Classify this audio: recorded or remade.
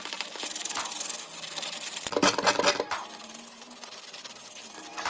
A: remade